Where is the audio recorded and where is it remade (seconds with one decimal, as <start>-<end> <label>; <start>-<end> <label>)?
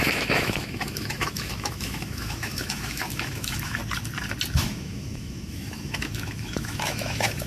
0.0-3.8 remade; 3.8-4.5 recorded; 4.5-7.5 remade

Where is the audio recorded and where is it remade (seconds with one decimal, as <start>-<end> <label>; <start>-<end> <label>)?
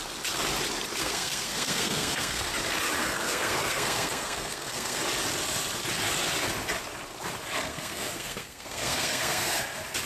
0.0-1.0 recorded; 1.0-2.4 remade; 2.4-3.0 recorded; 3.0-5.0 remade; 5.0-7.7 recorded; 7.7-9.6 remade; 9.6-10.1 recorded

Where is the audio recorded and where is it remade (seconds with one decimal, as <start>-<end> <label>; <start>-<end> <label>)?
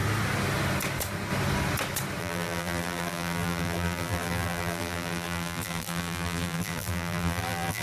0.0-2.2 recorded; 2.2-7.8 remade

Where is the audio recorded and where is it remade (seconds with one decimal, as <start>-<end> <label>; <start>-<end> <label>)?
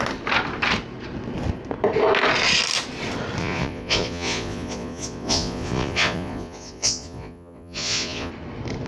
0.0-3.4 recorded; 3.4-8.3 remade; 8.3-8.9 recorded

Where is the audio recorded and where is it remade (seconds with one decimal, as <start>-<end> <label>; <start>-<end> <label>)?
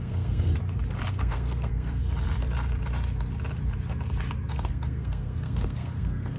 0.0-0.5 remade; 0.5-1.1 recorded; 1.1-2.0 remade; 2.0-4.5 recorded; 4.5-6.4 remade